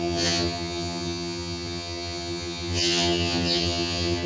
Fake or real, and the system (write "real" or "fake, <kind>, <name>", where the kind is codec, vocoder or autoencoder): fake, vocoder, HiFi-GAN